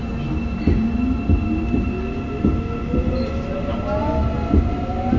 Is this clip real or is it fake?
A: real